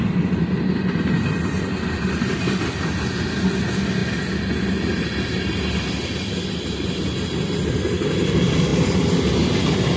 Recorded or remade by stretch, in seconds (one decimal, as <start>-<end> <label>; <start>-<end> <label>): 0.0-10.0 recorded